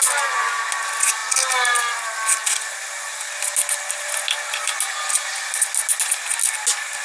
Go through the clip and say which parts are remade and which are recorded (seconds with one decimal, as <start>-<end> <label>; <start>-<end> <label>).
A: 0.0-7.0 recorded

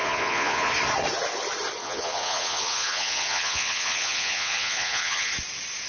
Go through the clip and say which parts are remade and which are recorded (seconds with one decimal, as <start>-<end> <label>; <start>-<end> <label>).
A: 0.0-0.7 remade; 0.7-1.8 recorded; 1.8-5.3 remade; 5.3-5.9 recorded

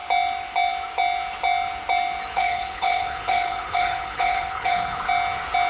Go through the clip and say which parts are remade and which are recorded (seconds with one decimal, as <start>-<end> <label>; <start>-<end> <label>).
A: 0.0-2.3 recorded; 2.3-5.0 remade; 5.0-5.7 recorded

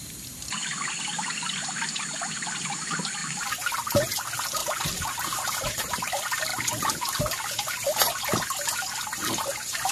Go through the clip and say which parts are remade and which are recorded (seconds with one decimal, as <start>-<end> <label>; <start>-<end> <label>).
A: 0.0-3.2 recorded; 3.2-4.1 remade; 4.1-4.6 recorded; 4.6-6.1 remade; 6.1-9.9 recorded

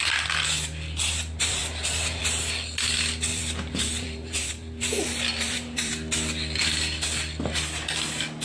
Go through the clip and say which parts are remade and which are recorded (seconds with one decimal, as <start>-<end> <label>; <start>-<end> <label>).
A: 0.0-1.4 recorded; 1.4-2.2 remade; 2.2-3.3 recorded; 3.3-5.9 remade; 5.9-8.4 recorded

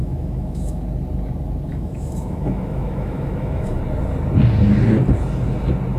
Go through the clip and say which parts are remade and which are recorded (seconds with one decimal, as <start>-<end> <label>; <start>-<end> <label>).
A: 0.0-0.8 remade; 0.8-1.7 recorded; 1.7-3.8 remade; 3.8-6.0 recorded

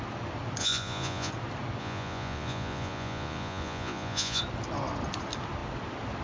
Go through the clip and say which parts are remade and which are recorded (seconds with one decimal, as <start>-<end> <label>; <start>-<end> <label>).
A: 0.0-0.6 recorded; 0.6-1.3 remade; 1.3-1.8 recorded; 1.8-4.4 remade; 4.4-6.2 recorded

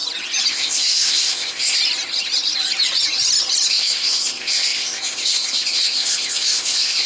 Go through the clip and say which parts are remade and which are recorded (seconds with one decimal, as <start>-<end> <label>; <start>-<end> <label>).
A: 0.0-0.5 recorded; 0.5-1.8 remade; 1.8-3.7 recorded; 3.7-7.1 remade